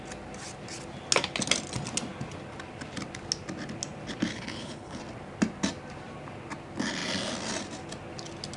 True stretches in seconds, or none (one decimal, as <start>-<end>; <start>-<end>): 0.0-4.3; 5.0-8.6